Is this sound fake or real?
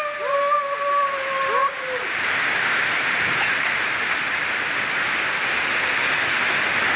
real